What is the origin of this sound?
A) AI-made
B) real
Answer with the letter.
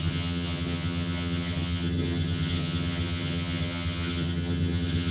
A